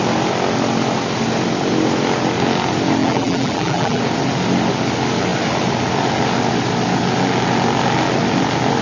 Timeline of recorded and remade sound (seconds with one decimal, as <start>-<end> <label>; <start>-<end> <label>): 0.0-3.0 recorded; 3.0-4.0 remade; 4.0-8.8 recorded